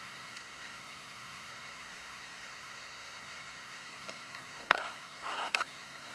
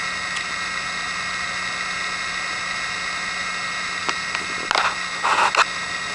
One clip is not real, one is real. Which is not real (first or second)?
first